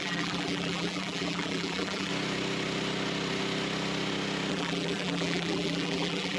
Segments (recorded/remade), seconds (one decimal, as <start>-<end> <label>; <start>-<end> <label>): 0.0-2.1 remade; 2.1-4.5 recorded; 4.5-6.4 remade